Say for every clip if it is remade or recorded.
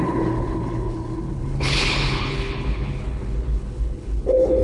remade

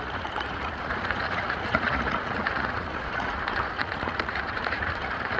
remade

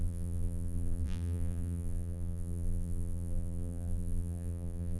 remade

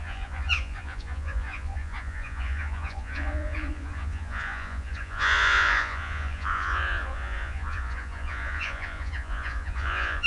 remade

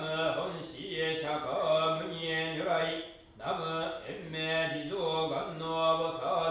recorded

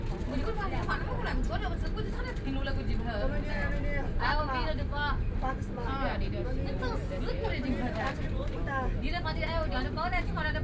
recorded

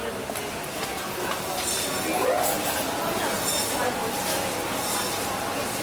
recorded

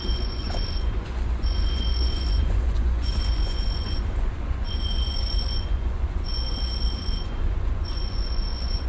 remade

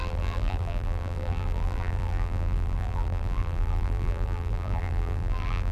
remade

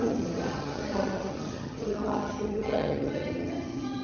remade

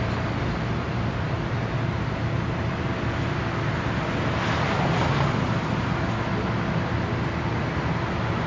recorded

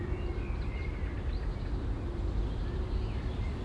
recorded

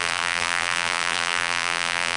remade